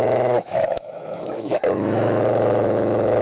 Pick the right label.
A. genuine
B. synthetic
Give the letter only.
B